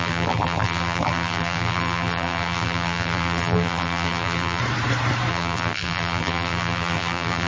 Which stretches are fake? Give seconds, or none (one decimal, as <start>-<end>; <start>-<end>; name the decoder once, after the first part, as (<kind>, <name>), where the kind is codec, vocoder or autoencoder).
0.0-4.6 (vocoder, BigVGAN v2); 5.3-7.5